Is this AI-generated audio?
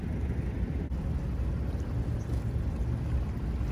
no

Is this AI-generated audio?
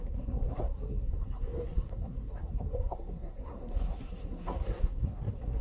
yes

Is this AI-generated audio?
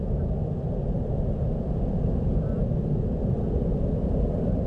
no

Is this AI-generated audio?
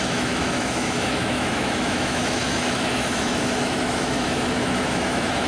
yes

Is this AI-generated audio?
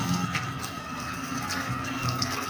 yes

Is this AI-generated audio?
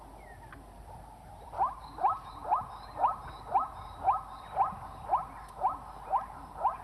no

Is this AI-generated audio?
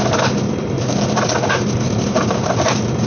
no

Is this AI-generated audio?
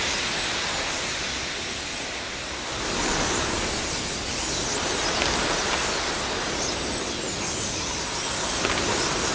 no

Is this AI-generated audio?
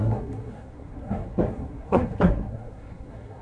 yes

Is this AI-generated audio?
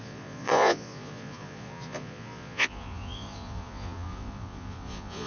yes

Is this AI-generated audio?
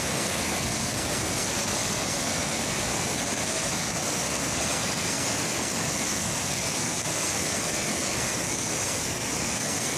yes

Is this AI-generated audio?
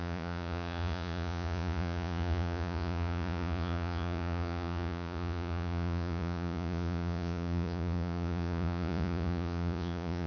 yes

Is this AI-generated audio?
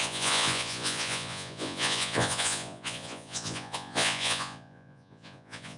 yes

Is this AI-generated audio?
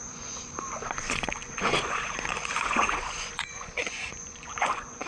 yes